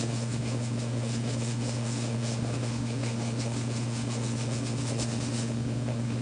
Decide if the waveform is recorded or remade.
remade